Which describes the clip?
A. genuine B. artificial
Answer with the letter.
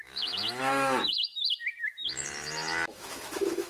B